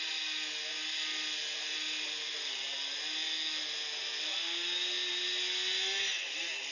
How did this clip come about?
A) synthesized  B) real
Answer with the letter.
B